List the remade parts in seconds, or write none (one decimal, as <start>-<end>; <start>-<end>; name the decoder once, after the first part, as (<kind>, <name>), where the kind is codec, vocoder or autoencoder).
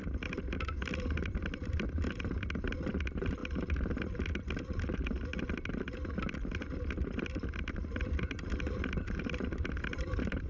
0.0-3.4 (vocoder, BigVGAN v2); 7.0-10.5